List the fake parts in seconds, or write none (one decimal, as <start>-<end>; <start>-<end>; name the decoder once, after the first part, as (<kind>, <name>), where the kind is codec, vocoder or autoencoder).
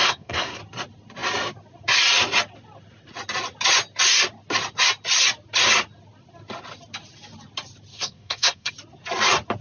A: 0.0-0.6 (codec, SNAC); 7.9-8.7